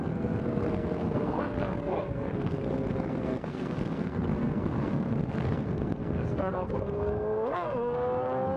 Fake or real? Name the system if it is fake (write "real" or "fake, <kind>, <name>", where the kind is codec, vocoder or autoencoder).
fake, codec, SNAC